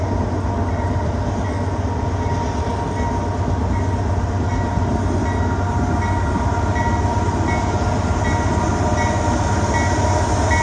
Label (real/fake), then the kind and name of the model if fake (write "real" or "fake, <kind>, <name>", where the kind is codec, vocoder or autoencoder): real